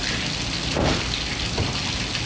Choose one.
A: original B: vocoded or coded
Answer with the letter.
A